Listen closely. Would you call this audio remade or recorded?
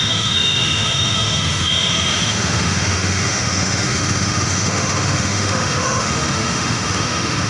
remade